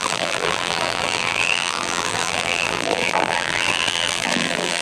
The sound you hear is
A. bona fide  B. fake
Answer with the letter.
B